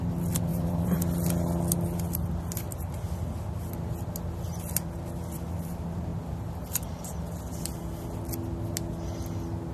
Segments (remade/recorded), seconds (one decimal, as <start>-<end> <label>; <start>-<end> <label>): 0.0-0.5 recorded; 0.5-1.0 remade; 1.0-9.7 recorded